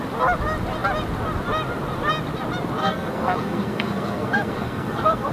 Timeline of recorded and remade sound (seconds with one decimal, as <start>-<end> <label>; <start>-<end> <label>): 0.0-2.8 recorded; 2.8-5.3 remade